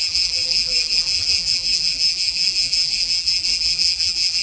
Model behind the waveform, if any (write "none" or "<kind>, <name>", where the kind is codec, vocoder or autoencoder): vocoder, BigVGAN v2